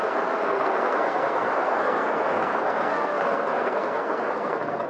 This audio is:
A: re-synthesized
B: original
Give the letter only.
A